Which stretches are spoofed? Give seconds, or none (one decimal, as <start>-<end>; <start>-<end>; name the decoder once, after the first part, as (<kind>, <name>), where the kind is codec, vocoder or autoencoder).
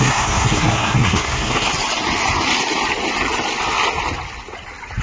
0.0-1.7 (codec, SNAC)